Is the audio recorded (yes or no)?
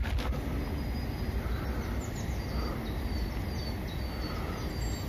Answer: yes